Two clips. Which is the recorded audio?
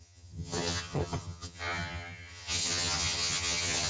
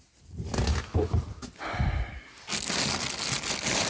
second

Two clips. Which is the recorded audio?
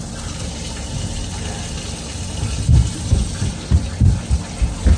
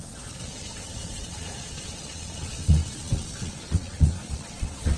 first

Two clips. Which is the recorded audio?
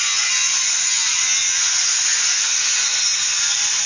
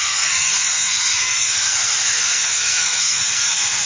first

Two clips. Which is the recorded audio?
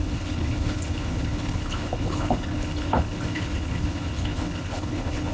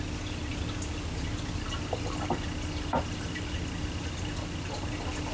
second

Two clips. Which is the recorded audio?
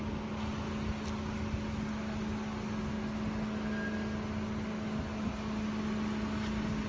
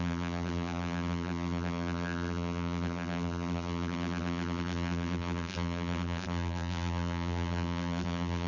first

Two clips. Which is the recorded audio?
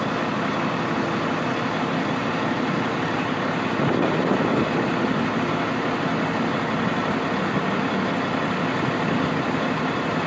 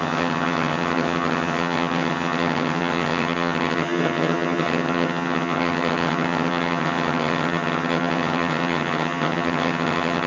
first